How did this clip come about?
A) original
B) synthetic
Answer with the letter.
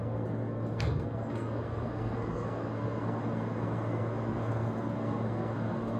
B